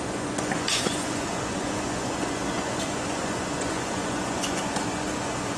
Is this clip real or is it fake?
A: fake